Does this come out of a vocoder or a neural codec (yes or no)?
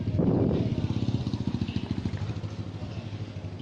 no